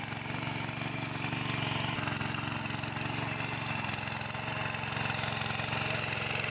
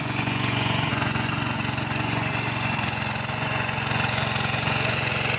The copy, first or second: second